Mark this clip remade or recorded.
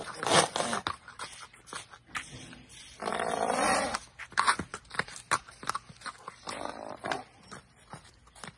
recorded